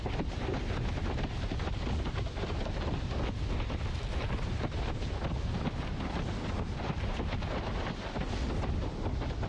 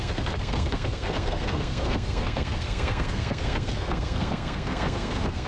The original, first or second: first